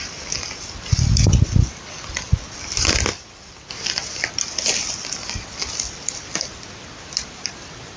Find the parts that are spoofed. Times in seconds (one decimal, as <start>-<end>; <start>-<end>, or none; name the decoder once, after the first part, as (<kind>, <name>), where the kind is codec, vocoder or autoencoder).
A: none